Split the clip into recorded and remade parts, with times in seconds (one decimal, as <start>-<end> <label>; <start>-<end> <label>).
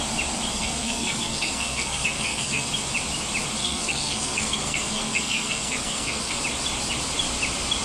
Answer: 0.0-0.5 recorded; 0.5-2.7 remade; 2.7-3.6 recorded; 3.6-6.4 remade; 6.4-7.8 recorded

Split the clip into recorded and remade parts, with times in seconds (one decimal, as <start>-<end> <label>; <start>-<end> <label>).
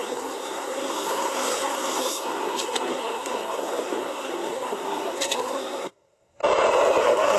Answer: 0.0-6.4 remade; 6.4-7.0 recorded; 7.0-7.4 remade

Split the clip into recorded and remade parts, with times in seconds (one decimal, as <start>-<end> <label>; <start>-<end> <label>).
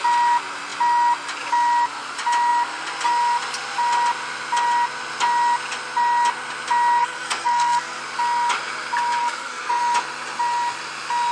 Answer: 0.0-7.0 recorded; 7.0-8.0 remade; 8.0-9.2 recorded; 9.2-9.8 remade; 9.8-11.3 recorded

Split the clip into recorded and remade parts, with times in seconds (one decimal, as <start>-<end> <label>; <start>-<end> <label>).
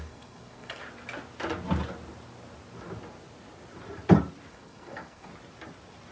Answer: 0.0-0.8 remade; 0.8-4.5 recorded; 4.5-5.3 remade; 5.3-6.1 recorded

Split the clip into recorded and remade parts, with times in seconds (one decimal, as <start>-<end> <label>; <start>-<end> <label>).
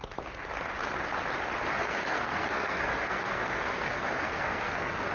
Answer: 0.0-1.8 recorded; 1.8-5.1 remade